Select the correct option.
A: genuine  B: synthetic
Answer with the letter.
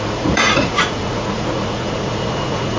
B